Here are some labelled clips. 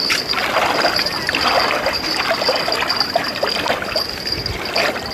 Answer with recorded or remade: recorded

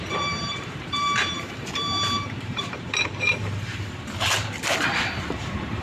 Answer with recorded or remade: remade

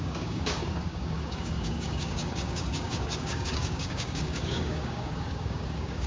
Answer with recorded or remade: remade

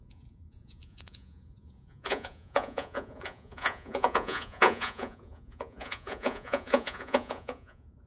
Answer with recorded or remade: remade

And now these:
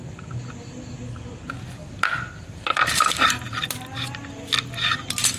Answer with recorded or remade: recorded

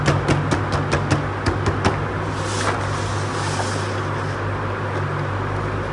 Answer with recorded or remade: recorded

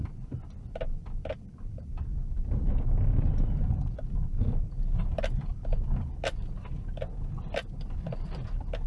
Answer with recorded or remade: recorded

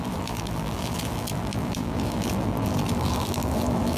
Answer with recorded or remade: remade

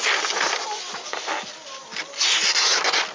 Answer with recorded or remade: recorded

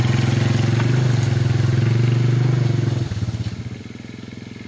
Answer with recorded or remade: recorded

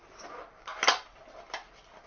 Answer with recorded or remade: recorded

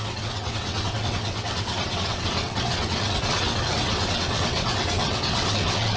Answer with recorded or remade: remade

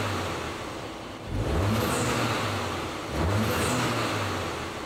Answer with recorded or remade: recorded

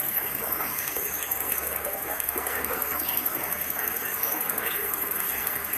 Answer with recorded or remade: remade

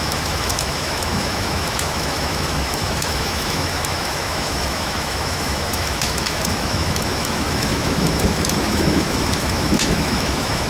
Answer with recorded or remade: remade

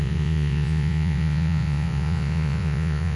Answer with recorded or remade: remade